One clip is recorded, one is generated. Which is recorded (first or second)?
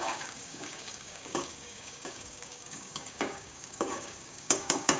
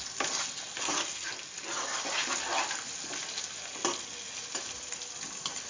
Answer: second